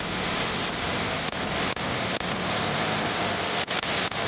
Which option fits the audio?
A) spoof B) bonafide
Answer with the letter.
B